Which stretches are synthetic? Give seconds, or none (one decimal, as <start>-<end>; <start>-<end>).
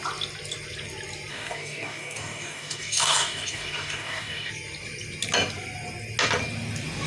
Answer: 1.3-4.5